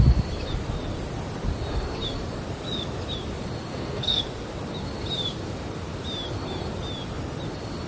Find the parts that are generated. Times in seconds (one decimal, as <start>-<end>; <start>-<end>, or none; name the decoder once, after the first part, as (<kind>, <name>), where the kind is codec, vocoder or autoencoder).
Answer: 3.7-4.2 (codec, SNAC)